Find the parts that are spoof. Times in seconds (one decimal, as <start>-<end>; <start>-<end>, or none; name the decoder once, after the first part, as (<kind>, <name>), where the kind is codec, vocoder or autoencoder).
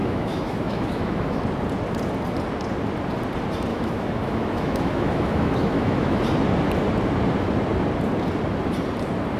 0.0-1.4 (autoencoder, DAC-VAE); 3.7-6.2